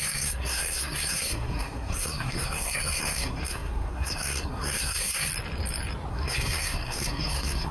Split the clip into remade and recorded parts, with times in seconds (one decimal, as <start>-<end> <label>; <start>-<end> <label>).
0.0-5.3 remade; 5.3-6.1 recorded; 6.1-7.7 remade